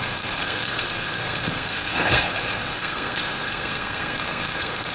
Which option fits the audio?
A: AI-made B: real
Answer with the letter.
A